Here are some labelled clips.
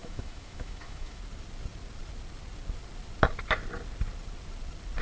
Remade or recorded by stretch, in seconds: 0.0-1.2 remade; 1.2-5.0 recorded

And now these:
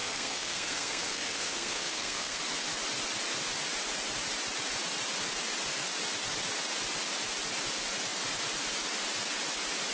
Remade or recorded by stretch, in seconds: 0.0-2.4 remade; 2.4-9.9 recorded

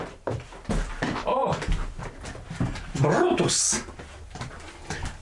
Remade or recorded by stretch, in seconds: 0.0-5.2 remade

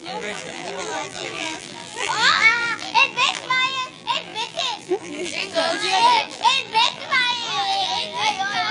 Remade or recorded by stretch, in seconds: 0.0-8.7 remade

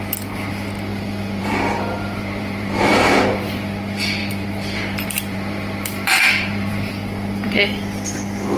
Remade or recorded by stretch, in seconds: 0.0-0.9 recorded; 0.9-3.4 remade; 3.4-4.2 recorded; 4.2-6.9 remade; 6.9-8.6 recorded